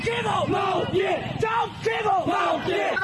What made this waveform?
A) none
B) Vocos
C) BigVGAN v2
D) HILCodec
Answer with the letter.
A